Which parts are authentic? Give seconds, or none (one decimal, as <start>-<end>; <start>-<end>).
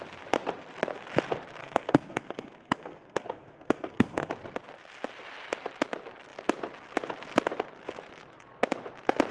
0.0-1.6; 4.3-9.3